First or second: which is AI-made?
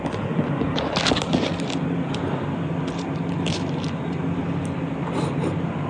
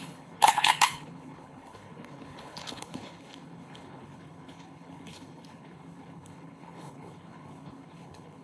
second